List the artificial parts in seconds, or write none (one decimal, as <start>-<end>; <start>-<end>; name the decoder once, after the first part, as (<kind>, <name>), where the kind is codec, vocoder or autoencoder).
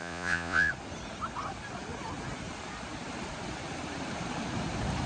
0.0-0.7 (vocoder, Vocos)